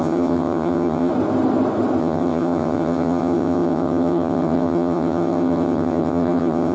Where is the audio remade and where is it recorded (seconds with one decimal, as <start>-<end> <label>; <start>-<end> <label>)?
0.0-1.1 remade; 1.1-2.0 recorded; 2.0-6.7 remade